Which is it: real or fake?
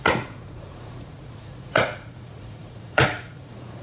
fake